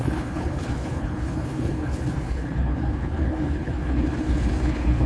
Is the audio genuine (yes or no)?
no